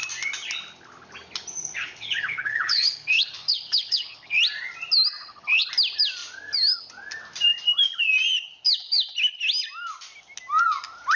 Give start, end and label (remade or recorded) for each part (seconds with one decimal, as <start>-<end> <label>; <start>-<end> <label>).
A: 0.0-1.6 recorded; 1.6-4.4 remade; 4.4-5.2 recorded; 5.2-5.7 remade; 5.7-11.2 recorded